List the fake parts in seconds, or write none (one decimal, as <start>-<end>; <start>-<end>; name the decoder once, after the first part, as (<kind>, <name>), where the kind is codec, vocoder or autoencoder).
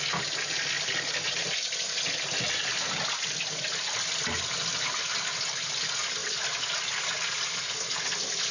none